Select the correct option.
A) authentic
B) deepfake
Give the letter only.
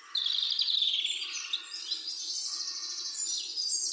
A